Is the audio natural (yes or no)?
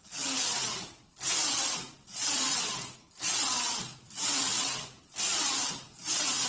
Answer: yes